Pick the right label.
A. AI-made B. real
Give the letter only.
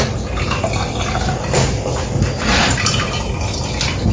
B